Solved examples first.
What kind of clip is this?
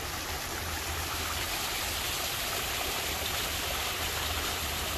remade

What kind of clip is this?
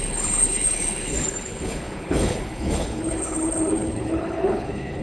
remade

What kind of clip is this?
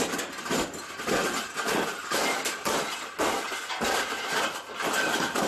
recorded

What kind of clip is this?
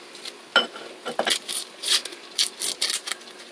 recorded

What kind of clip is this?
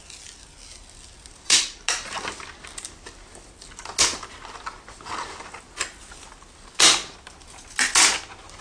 recorded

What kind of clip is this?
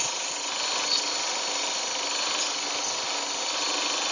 recorded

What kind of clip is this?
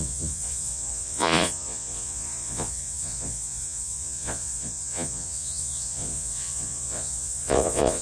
remade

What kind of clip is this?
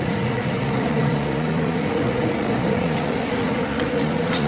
remade